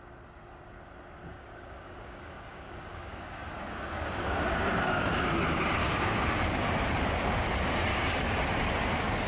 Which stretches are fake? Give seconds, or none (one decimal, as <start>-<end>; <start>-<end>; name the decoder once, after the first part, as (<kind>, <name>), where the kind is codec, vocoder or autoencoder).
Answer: 1.3-5.3 (codec, DAC); 5.8-6.4; 7.9-8.4